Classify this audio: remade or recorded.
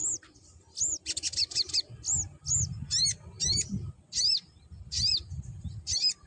recorded